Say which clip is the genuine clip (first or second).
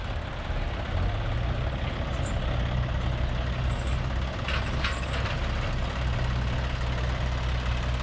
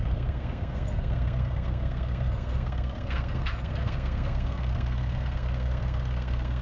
first